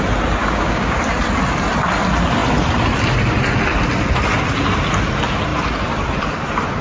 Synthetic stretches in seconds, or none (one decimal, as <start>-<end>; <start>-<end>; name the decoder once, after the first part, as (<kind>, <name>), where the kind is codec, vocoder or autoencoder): 0.4-1.0 (codec, DAC)